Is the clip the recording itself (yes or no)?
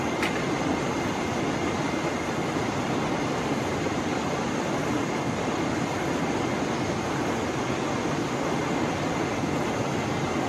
yes